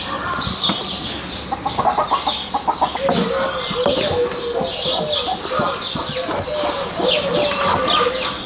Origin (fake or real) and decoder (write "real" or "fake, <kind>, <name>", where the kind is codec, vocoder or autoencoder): real